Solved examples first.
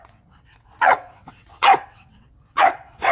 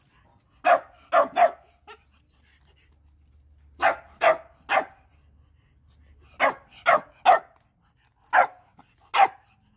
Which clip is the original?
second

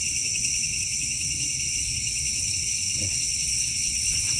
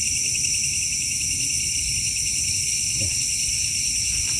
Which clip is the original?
second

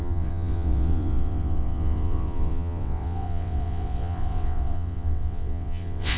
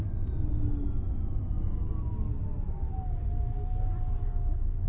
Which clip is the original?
second